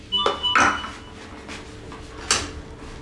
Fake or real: real